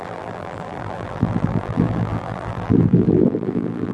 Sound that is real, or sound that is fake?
fake